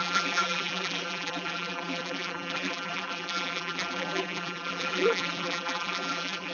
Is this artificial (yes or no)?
yes